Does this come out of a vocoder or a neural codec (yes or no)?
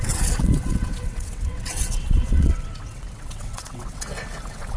yes